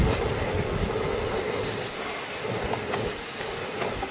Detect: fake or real real